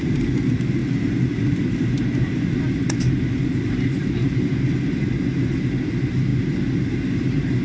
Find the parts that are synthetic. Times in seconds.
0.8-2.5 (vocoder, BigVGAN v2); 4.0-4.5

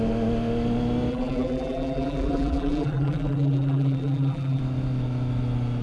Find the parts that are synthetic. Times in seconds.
1.1-4.6 (vocoder, BigVGAN v2)

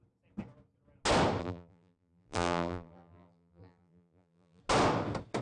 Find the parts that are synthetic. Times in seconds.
1.4-4.6 (vocoder, BigVGAN v2)